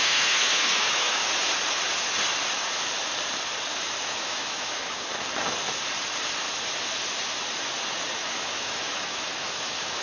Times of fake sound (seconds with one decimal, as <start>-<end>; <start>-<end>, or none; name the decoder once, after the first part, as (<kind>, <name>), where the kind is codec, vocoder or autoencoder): 0.0-1.2 (autoencoder, DAC-VAE); 3.7-5.1; 8.2-10.0